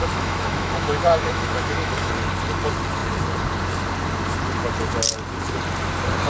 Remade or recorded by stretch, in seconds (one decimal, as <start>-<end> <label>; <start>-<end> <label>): 0.0-2.1 remade; 2.1-6.3 recorded